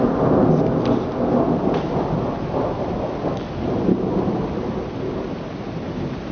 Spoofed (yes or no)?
no